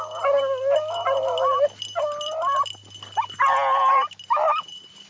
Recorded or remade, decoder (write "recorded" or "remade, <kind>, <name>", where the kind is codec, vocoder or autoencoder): recorded